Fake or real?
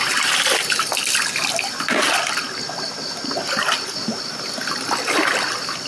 real